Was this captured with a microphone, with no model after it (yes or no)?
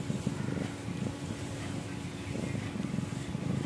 yes